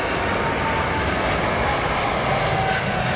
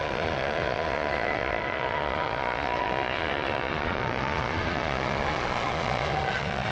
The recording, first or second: first